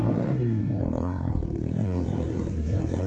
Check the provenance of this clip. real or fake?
fake